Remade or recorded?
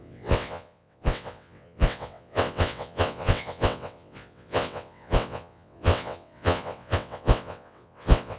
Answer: remade